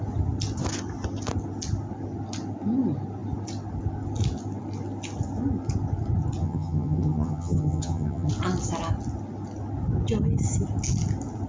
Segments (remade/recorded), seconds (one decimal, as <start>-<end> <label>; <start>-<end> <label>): 0.0-6.4 recorded; 6.4-8.3 remade; 8.3-11.5 recorded